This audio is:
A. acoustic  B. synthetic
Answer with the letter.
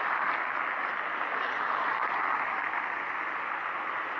A